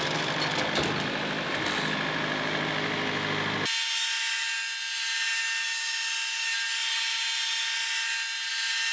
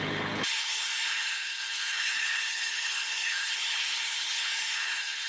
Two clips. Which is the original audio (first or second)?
first